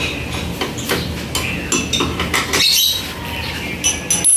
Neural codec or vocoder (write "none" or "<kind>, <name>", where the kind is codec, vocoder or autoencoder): none